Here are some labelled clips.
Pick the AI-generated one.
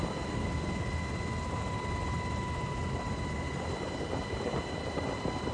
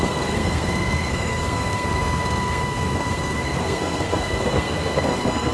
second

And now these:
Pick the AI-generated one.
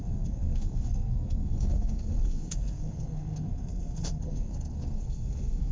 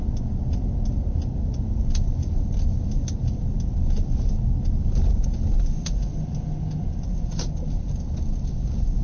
first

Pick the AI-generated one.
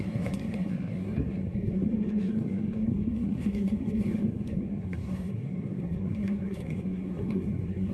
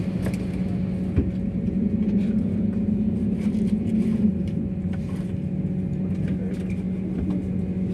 first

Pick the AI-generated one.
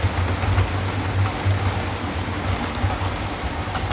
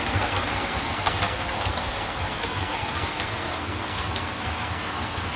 second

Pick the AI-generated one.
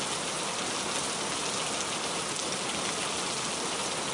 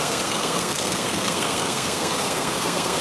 second